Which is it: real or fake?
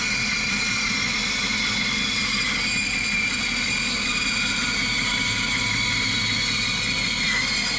real